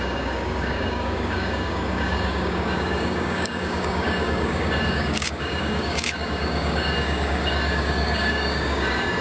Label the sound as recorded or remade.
remade